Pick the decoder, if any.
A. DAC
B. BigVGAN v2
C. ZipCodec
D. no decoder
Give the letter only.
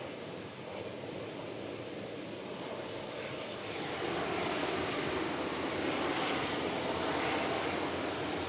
D